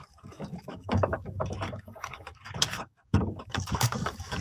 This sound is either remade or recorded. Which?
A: remade